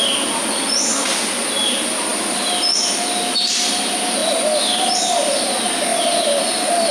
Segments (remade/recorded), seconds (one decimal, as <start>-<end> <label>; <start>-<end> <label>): 0.0-2.1 recorded; 2.1-3.5 remade; 3.5-6.9 recorded